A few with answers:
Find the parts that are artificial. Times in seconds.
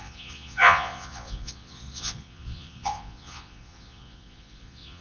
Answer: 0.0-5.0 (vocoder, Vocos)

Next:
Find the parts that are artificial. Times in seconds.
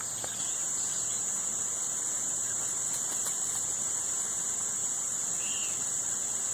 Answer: none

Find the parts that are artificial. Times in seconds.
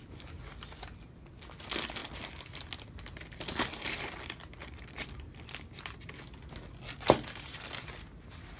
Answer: none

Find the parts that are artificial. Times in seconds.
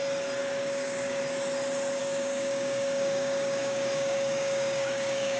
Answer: 0.4-1.2 (codec, DAC); 2.0-5.4